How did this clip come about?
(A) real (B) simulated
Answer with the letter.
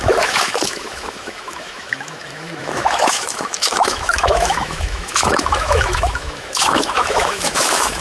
B